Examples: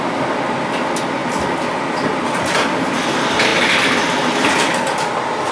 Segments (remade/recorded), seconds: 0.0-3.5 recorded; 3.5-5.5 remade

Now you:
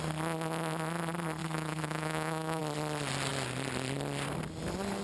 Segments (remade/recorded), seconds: 0.0-1.4 recorded; 1.4-2.6 remade; 2.6-5.0 recorded